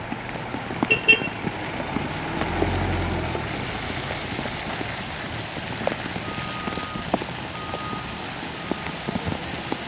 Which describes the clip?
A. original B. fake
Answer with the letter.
A